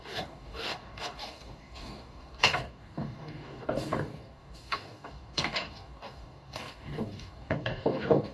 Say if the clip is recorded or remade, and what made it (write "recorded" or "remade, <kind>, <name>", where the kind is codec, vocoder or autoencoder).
remade, codec, DAC